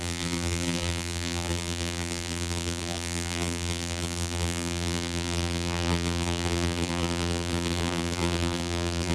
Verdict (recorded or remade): remade